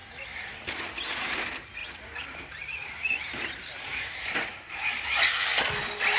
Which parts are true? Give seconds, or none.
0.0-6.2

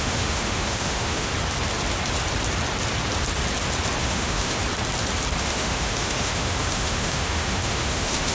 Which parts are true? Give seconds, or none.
1.3-4.0; 4.6-5.4

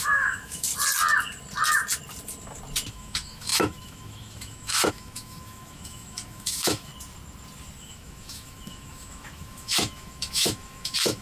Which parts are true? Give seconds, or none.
0.7-2.9; 6.9-7.8